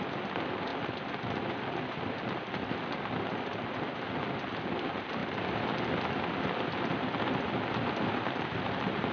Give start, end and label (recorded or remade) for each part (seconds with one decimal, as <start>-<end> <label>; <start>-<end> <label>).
0.0-5.2 recorded; 5.2-6.2 remade; 6.2-9.1 recorded